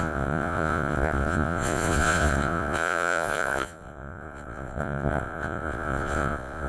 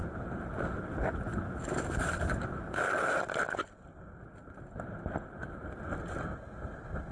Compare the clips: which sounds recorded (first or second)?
second